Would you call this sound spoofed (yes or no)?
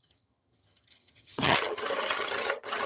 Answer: yes